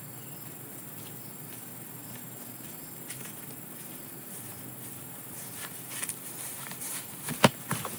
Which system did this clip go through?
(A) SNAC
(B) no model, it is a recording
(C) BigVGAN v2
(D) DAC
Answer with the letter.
C